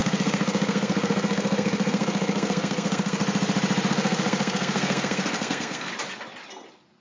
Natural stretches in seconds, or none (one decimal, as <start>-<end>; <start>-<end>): 3.2-3.9; 5.9-7.0